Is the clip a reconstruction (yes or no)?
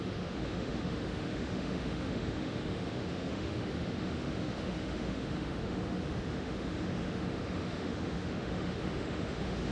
yes